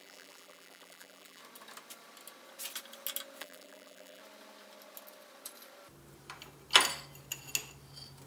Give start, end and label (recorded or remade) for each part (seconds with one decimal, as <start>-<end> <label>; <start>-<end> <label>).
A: 0.0-1.4 remade; 1.4-3.4 recorded; 3.4-4.2 remade; 4.2-8.3 recorded